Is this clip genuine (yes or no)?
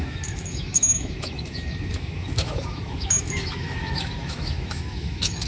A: no